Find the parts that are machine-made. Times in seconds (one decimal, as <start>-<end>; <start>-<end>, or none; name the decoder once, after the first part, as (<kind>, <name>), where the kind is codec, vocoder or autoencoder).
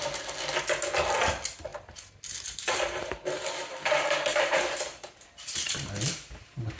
1.7-3.5 (vocoder, BigVGAN v2); 4.3-5.9